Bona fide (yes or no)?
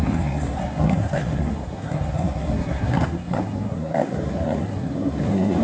no